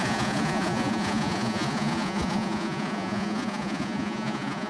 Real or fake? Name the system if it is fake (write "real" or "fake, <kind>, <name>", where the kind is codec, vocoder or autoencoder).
fake, vocoder, Vocos